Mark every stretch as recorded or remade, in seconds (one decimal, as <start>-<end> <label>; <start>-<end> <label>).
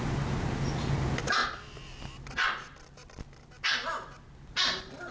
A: 0.0-5.1 recorded